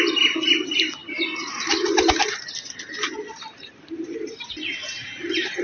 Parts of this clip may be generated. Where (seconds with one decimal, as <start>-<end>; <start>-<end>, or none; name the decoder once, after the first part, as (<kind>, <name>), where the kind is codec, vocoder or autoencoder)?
none